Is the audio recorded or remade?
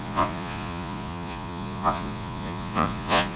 remade